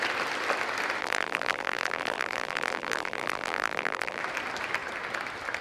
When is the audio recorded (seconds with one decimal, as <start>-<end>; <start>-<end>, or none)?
0.0-1.0; 4.2-5.6